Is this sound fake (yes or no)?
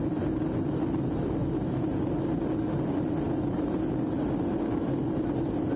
no